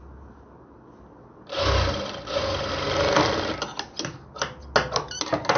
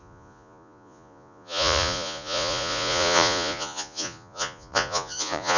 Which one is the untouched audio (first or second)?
first